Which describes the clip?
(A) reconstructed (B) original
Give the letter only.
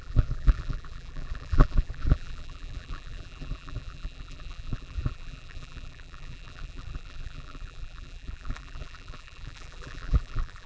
A